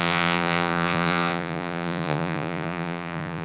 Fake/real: fake